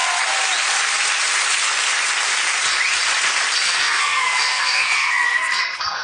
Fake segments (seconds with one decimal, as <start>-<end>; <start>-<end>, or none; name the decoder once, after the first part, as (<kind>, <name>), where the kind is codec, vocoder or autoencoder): 3.6-6.0 (codec, SNAC)